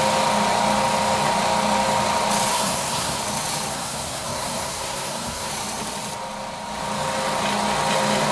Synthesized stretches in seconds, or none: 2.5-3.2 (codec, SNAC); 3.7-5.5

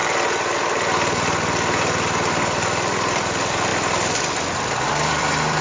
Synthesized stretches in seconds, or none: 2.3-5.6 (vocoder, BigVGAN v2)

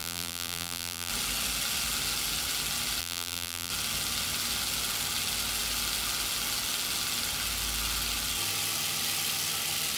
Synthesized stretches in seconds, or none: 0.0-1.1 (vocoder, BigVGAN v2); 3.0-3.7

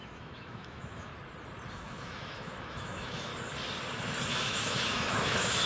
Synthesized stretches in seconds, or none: 0.0-1.1 (autoencoder, DAC-VAE); 1.7-3.3; 4.3-5.7

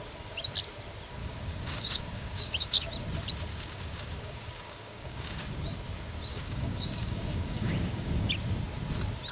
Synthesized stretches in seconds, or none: 1.2-2.9 (codec, DAC); 3.5-5.4; 6.3-8.3

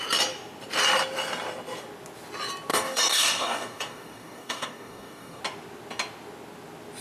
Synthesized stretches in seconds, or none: 2.7-5.4 (codec, DAC)

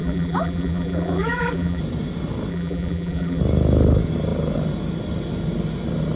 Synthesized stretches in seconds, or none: 0.0-1.8 (vocoder, BigVGAN v2); 2.5-3.4